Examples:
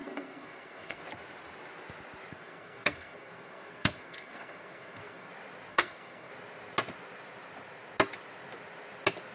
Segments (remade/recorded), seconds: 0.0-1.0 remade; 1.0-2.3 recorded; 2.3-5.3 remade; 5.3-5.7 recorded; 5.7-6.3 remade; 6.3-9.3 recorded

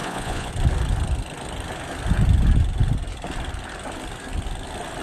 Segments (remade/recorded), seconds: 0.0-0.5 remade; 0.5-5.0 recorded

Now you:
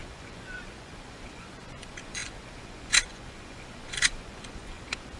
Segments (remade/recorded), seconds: 0.0-5.2 remade

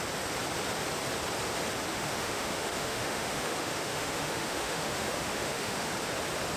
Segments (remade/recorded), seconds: 0.0-1.9 recorded; 1.9-5.9 remade; 5.9-6.6 recorded

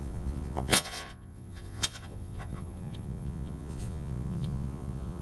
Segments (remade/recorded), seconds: 0.0-5.2 remade

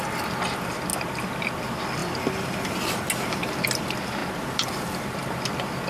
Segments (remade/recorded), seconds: 0.0-5.9 recorded

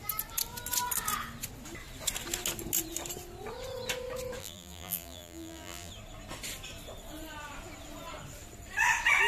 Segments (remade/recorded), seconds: 0.0-4.4 recorded; 4.4-5.9 remade; 5.9-9.3 recorded